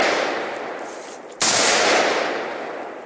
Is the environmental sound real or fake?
real